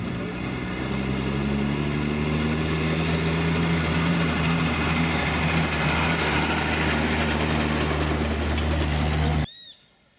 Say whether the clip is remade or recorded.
recorded